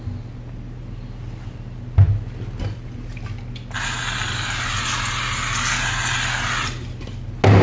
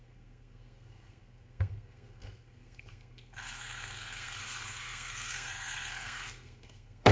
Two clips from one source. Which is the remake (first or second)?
second